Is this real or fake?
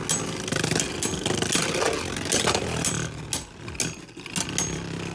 real